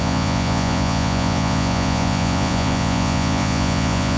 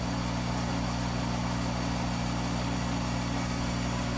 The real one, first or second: second